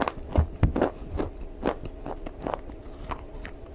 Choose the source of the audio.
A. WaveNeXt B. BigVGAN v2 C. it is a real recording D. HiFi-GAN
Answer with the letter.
C